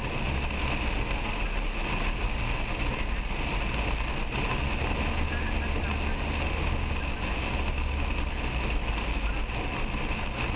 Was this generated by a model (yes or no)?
no